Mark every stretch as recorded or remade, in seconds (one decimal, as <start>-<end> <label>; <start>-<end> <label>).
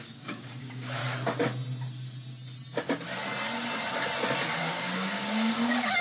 0.0-1.0 remade; 1.0-4.6 recorded; 4.6-6.0 remade